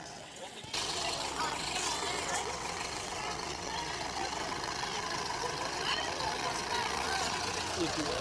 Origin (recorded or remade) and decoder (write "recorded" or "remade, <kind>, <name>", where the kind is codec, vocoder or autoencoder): remade, vocoder, WaveNeXt